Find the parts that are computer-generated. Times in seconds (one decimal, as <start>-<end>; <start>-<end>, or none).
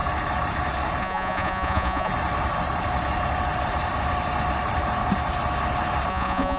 1.0-2.1; 6.1-6.6